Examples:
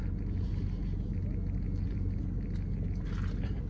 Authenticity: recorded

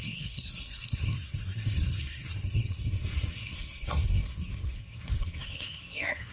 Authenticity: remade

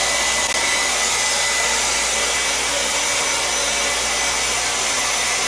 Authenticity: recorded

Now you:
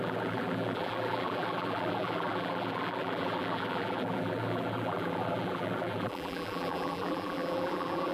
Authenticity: remade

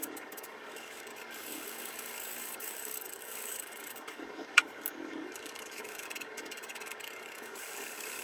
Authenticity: remade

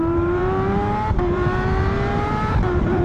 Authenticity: remade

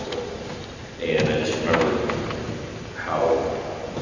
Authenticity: recorded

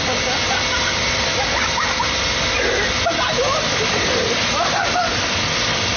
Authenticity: recorded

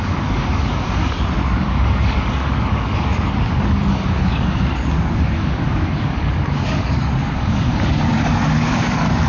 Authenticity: remade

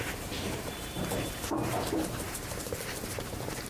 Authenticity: remade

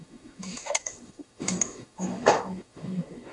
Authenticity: remade